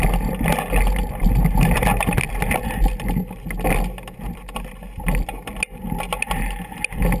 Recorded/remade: recorded